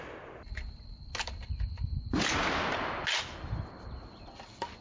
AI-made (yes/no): no